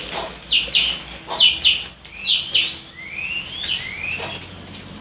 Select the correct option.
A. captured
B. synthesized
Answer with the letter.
A